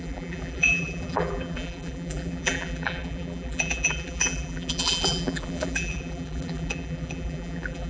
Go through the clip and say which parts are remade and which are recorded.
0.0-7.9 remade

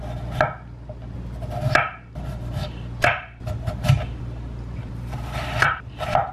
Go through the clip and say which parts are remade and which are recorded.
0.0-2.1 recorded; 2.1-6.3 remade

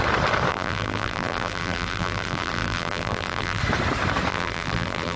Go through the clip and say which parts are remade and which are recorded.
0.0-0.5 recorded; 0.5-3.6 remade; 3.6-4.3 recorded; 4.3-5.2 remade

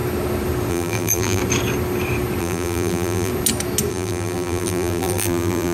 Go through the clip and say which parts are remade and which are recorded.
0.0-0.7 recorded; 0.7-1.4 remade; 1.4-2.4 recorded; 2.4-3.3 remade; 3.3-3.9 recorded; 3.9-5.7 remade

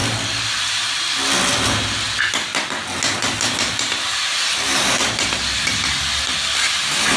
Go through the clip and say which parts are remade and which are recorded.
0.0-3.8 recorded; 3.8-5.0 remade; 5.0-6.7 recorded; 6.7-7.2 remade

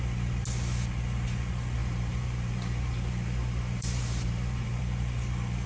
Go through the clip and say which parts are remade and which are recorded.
0.0-1.8 recorded; 1.8-4.8 remade; 4.8-5.7 recorded